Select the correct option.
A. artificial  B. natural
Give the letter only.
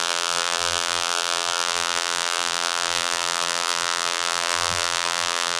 A